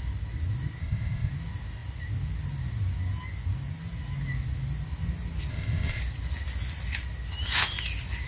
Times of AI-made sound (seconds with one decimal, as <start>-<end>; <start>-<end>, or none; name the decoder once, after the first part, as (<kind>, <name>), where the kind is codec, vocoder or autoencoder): 0.8-1.3 (codec, ZipCodec); 5.5-6.0